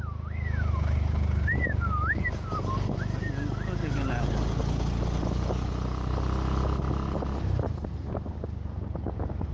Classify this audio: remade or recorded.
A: recorded